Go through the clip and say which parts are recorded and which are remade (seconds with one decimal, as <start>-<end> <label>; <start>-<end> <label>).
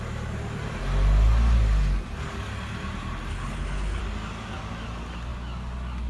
0.0-3.3 recorded; 3.3-4.0 remade; 4.0-6.1 recorded